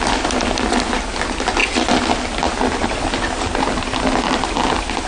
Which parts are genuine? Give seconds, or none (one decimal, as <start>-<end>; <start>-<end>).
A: 0.0-5.1